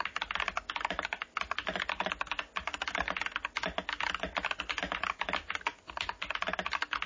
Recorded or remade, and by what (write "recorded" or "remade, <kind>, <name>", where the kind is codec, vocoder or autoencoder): recorded